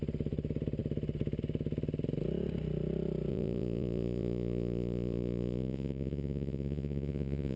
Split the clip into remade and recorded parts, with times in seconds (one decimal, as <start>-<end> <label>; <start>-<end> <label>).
0.0-3.3 recorded; 3.3-7.6 remade